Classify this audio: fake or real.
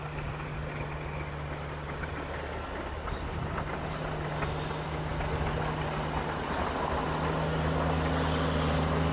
real